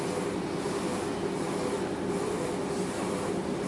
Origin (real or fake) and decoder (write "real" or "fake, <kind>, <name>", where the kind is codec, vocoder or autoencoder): real